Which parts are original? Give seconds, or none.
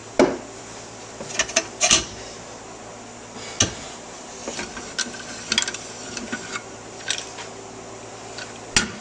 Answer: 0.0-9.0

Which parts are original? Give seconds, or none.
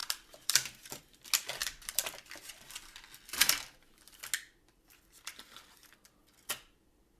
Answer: 1.0-1.6; 2.2-3.4; 4.2-7.2